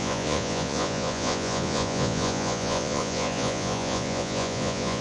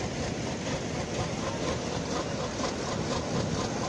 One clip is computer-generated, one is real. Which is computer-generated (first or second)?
first